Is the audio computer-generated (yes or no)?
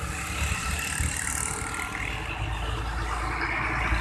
no